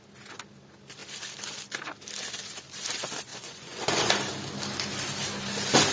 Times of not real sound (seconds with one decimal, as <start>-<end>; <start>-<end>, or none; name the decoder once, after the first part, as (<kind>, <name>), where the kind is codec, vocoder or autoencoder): 3.3-4.1 (vocoder, Vocos)